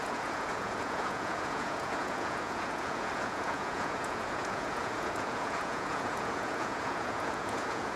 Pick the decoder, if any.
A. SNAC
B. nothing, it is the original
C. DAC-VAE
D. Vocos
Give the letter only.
D